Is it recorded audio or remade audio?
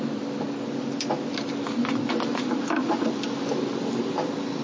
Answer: recorded